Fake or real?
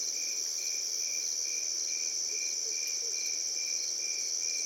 real